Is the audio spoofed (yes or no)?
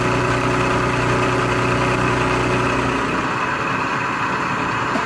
no